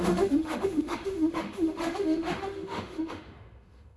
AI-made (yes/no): yes